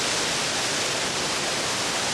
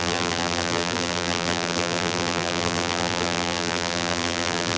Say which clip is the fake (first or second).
second